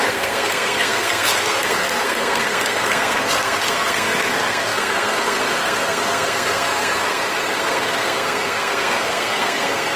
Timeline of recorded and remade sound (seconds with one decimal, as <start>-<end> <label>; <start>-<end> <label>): 0.0-10.0 remade